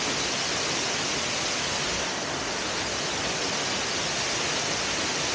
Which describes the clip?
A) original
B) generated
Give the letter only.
A